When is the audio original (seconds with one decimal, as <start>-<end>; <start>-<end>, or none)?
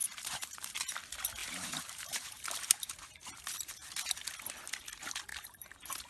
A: 0.7-1.4; 3.9-5.3